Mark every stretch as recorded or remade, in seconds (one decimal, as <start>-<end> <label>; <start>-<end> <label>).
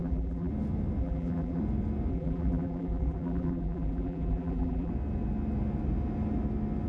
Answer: 0.0-0.5 remade; 0.5-1.0 recorded; 1.0-1.6 remade; 1.6-2.1 recorded; 2.1-4.9 remade; 4.9-6.9 recorded